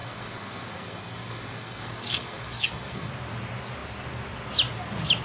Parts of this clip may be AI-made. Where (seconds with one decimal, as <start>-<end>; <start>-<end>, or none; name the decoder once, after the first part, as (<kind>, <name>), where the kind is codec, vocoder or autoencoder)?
0.0-3.1 (codec, SNAC)